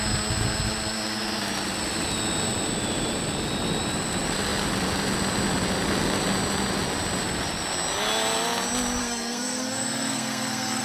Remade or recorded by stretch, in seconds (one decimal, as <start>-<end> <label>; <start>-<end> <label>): 0.0-9.0 recorded; 9.0-10.8 remade